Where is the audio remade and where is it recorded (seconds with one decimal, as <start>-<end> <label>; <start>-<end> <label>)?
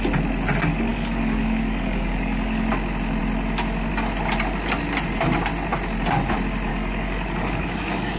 0.0-0.9 recorded; 0.9-2.7 remade; 2.7-6.7 recorded; 6.7-8.2 remade